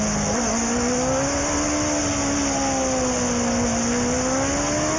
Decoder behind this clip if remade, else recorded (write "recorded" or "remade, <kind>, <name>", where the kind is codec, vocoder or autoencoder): recorded